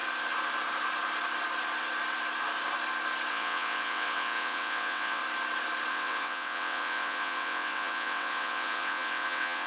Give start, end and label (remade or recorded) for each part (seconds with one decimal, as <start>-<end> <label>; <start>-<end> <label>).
0.0-3.3 recorded; 3.3-5.2 remade; 5.2-5.9 recorded; 5.9-9.7 remade